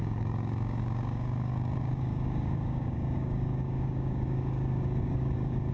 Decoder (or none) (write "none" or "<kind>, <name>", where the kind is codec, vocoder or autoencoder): codec, DAC